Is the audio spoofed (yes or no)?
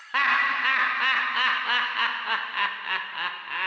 no